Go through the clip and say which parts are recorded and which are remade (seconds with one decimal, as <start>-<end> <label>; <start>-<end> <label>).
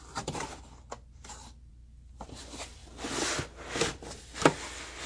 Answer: 0.0-5.1 recorded